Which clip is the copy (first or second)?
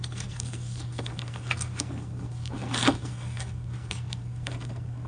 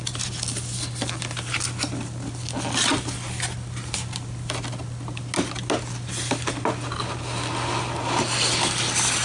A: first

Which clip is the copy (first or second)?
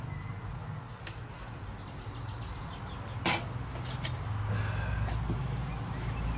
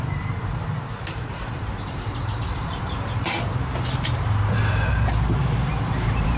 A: second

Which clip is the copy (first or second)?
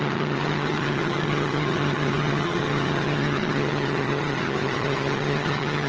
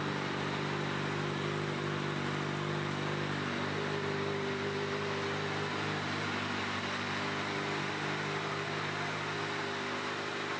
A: first